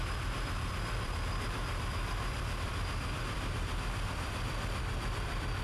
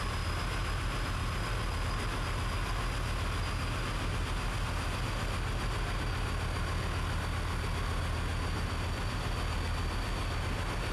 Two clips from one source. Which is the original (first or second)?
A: second